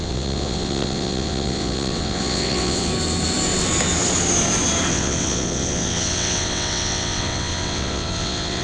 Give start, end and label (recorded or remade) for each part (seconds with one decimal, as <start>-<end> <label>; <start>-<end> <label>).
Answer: 0.0-2.9 remade; 2.9-4.9 recorded; 4.9-8.6 remade